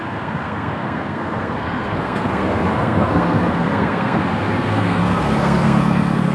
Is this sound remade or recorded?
remade